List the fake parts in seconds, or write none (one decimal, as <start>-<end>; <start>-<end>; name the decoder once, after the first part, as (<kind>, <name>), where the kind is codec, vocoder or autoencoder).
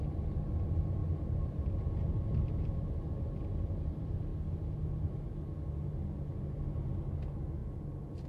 none